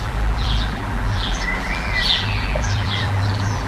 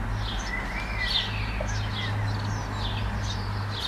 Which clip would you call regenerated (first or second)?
first